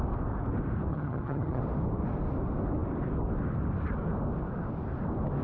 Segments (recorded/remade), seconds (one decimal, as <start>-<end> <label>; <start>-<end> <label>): 0.0-0.9 recorded; 0.9-1.6 remade; 1.6-5.4 recorded

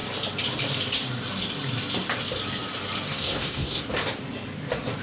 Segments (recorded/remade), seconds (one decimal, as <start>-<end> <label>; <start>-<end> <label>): 0.0-3.1 recorded; 3.1-3.9 remade; 3.9-5.0 recorded

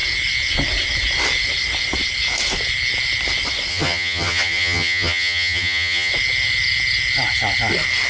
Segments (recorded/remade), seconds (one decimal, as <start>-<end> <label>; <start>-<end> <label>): 0.0-3.7 recorded; 3.7-6.1 remade; 6.1-8.1 recorded

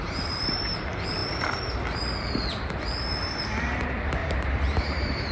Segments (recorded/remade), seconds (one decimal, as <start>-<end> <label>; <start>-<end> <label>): 0.0-4.2 recorded; 4.2-5.3 remade

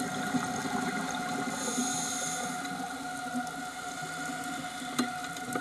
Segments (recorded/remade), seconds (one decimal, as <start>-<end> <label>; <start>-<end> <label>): 0.0-5.6 recorded

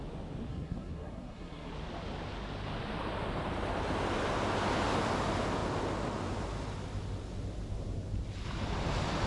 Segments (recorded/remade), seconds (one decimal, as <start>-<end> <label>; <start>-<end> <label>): 0.0-0.5 recorded; 0.5-1.7 remade; 1.7-9.3 recorded

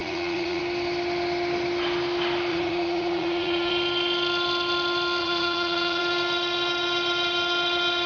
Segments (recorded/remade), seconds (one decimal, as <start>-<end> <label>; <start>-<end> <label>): 0.0-0.6 remade; 0.6-2.5 recorded; 2.5-3.7 remade; 3.7-5.2 recorded; 5.2-6.0 remade; 6.0-8.1 recorded

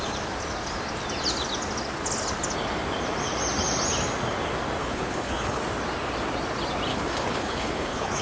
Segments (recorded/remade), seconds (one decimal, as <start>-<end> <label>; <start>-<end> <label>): 0.0-4.8 recorded; 4.8-5.6 remade; 5.6-6.9 recorded; 6.9-8.2 remade